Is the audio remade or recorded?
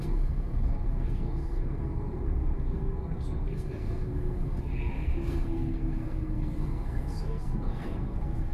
remade